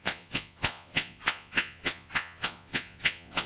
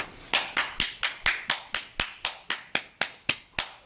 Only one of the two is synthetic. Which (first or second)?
first